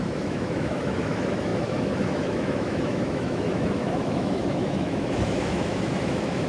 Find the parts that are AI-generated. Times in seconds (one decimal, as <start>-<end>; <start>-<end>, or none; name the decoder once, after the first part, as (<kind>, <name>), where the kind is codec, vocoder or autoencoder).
0.0-6.5 (autoencoder, DAC-VAE)